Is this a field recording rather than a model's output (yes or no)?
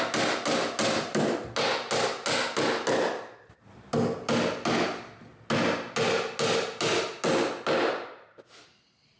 yes